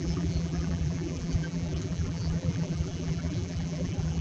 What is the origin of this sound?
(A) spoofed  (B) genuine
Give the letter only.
A